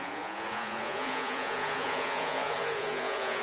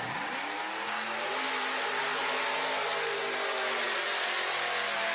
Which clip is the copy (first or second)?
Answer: first